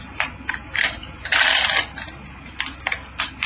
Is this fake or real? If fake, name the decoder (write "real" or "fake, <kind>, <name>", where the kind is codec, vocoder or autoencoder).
real